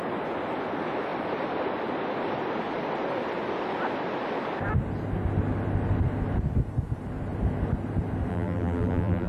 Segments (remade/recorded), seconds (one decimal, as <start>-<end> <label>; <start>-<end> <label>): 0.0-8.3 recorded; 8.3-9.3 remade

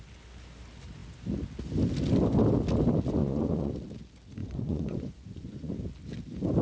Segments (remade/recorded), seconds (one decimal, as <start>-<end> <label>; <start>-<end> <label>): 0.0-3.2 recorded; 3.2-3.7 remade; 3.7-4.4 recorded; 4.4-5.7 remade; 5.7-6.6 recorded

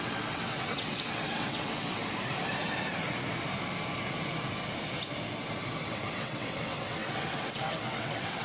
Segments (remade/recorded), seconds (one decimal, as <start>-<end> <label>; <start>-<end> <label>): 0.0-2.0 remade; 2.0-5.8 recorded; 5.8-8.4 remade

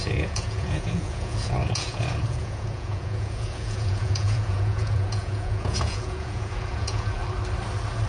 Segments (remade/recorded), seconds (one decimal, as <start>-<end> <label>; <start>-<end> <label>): 0.0-7.2 remade; 7.2-8.1 recorded